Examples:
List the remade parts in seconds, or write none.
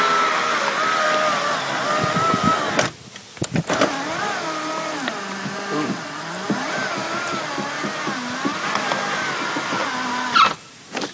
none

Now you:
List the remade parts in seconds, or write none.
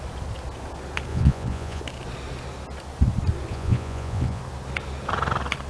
1.1-1.8 (vocoder, Vocos); 3.5-4.4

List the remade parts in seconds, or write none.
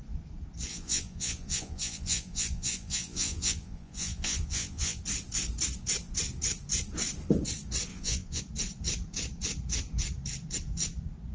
0.7-5.0 (vocoder, Vocos); 7.9-8.4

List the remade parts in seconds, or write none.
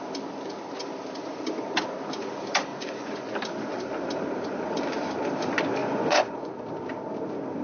2.7-3.3 (vocoder, Vocos); 5.8-6.5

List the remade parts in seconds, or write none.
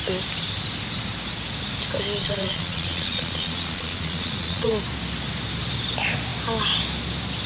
2.2-4.7 (vocoder, Vocos)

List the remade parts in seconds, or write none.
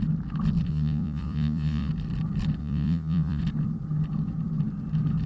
0.7-1.9 (vocoder, Vocos); 2.6-3.4